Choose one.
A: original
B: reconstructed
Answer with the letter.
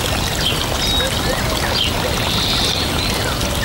A